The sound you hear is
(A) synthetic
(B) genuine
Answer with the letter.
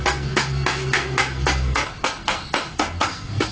A